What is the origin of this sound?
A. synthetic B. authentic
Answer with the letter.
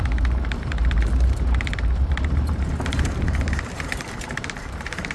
A